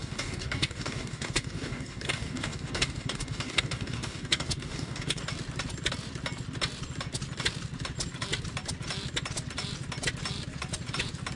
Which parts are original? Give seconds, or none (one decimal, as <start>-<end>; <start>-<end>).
5.2-11.4